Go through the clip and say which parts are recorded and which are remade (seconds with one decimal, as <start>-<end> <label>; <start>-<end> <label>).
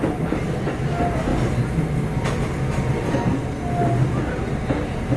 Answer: 0.0-5.2 recorded